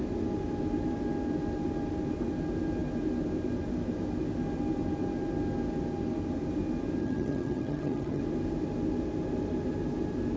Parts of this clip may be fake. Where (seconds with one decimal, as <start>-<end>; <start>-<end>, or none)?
7.0-8.2